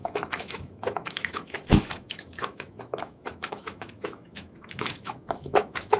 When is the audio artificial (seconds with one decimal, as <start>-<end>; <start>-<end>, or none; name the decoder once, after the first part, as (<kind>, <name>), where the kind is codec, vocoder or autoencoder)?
0.0-6.0 (autoencoder, DAC-VAE)